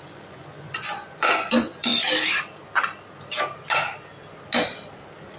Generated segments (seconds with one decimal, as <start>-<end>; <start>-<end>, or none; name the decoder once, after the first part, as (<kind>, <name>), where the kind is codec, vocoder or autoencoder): 0.0-1.9 (vocoder, Vocos)